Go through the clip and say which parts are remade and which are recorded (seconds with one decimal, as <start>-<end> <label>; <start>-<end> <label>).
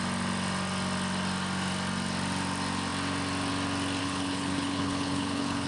0.0-4.0 recorded; 4.0-5.7 remade